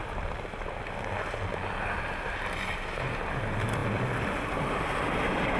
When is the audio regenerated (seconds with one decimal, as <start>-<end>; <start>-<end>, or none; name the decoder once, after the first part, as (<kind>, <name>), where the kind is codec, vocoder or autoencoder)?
none